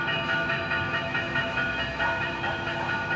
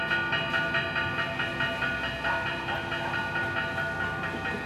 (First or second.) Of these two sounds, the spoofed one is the first